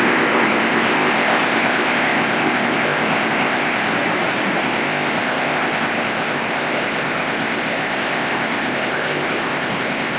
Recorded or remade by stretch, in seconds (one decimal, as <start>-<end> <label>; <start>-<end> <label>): 0.0-3.9 remade; 3.9-4.6 recorded; 4.6-10.2 remade

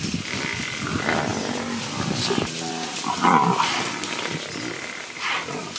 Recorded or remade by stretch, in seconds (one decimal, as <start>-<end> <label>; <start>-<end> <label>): 0.0-5.8 recorded

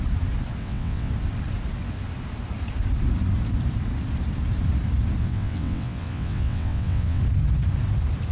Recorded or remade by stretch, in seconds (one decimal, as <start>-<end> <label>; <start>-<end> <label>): 0.0-0.6 recorded; 0.6-1.1 remade; 1.1-5.2 recorded; 5.2-7.2 remade; 7.2-8.3 recorded

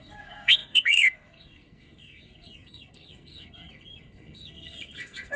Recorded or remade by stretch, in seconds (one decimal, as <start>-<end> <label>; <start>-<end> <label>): 0.0-5.4 remade

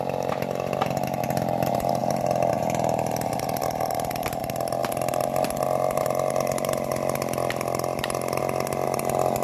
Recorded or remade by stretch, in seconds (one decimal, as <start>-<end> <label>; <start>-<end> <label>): 0.0-9.4 recorded

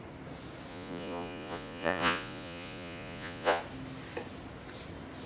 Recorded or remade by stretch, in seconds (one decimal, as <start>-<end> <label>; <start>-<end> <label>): 0.0-0.7 recorded; 0.7-3.6 remade; 3.6-5.3 recorded